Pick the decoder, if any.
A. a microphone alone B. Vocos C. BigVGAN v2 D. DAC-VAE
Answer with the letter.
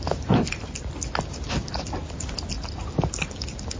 A